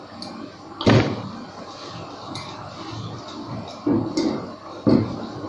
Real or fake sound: real